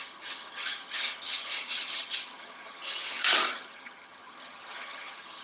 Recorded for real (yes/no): no